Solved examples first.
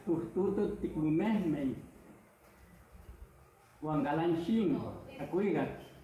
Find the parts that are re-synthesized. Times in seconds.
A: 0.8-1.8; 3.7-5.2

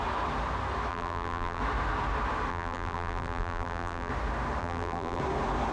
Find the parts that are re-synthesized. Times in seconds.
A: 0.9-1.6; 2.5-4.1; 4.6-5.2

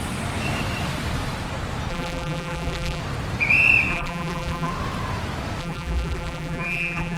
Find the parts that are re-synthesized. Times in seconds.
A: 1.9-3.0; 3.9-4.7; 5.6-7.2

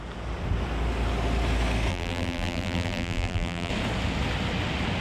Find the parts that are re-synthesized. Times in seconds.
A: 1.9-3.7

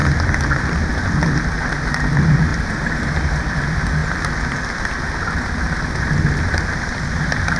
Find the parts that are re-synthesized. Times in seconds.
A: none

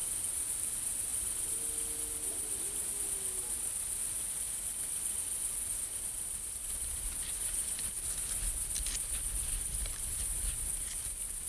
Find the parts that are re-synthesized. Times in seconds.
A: 0.0-0.7

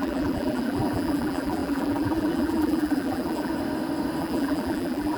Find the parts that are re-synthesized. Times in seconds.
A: 0.0-3.5; 4.2-5.2